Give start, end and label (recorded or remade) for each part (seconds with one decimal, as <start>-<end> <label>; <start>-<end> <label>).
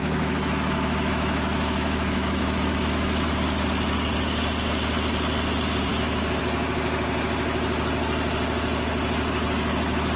0.0-3.3 remade; 3.3-5.9 recorded; 5.9-6.4 remade; 6.4-10.2 recorded